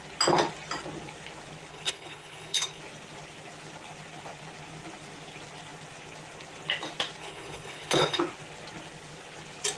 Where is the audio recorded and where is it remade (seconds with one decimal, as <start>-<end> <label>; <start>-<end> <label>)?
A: 0.0-1.7 recorded; 1.7-2.8 remade; 2.8-7.2 recorded; 7.2-8.2 remade; 8.2-9.8 recorded